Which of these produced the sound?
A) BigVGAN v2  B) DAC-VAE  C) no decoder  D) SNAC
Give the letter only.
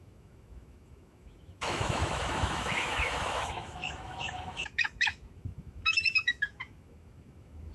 B